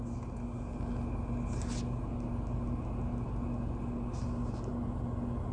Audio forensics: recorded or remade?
recorded